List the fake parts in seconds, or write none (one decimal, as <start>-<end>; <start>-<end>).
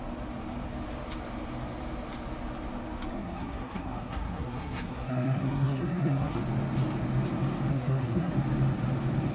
3.1-6.4; 7.7-8.3